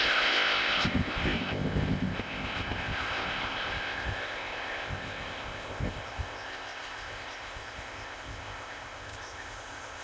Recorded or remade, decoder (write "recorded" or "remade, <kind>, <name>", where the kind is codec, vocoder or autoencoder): remade, codec, ZipCodec